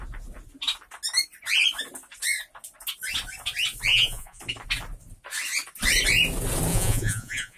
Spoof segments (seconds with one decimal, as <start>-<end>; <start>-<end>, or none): 3.9-4.4; 6.7-7.6